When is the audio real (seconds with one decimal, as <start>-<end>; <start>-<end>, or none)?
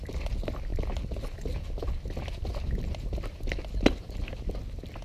0.0-5.0